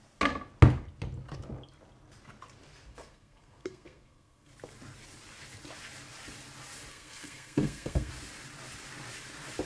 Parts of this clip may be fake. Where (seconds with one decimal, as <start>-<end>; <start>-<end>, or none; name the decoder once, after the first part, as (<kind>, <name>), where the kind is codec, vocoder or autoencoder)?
2.9-4.5 (codec, SNAC); 6.9-8.1